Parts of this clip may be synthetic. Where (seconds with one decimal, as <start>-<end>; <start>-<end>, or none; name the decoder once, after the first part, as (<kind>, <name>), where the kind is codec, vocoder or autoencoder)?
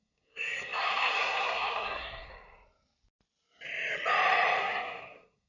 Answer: 0.0-2.3 (codec, SNAC); 4.6-5.5